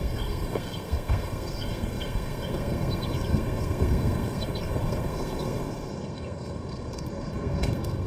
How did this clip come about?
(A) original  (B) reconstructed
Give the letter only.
B